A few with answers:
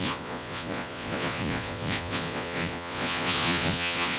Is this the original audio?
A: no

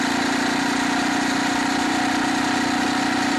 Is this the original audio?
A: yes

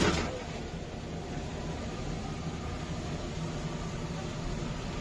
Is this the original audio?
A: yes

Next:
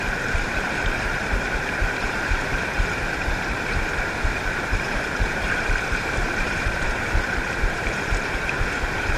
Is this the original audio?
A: no